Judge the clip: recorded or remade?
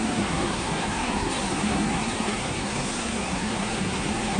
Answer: remade